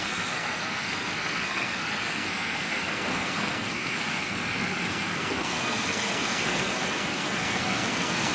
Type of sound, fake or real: fake